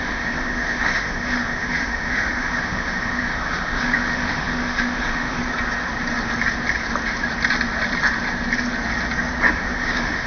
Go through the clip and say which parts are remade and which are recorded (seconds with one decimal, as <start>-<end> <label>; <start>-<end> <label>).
0.0-5.4 remade; 5.4-9.5 recorded; 9.5-10.3 remade